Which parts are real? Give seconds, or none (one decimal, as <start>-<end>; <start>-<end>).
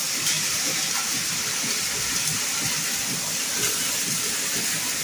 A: 0.0-5.0